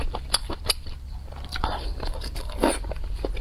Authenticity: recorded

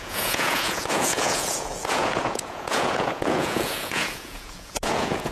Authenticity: remade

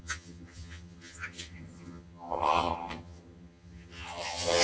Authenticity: remade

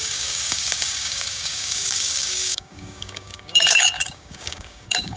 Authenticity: remade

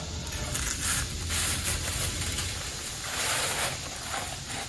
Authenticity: recorded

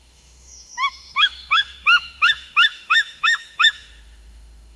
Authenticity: remade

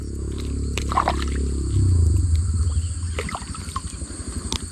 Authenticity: recorded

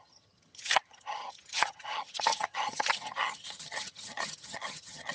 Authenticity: remade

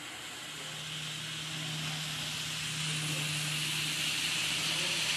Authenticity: recorded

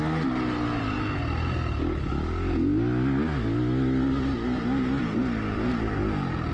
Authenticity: recorded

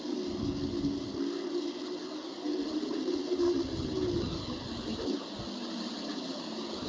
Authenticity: recorded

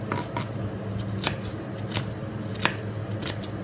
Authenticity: recorded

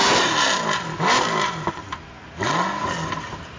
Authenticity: recorded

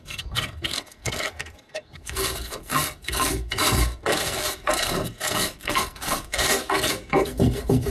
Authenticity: remade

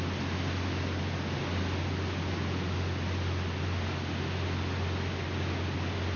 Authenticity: recorded